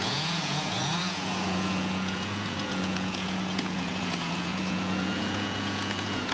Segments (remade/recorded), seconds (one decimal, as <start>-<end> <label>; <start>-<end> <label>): 0.0-6.3 remade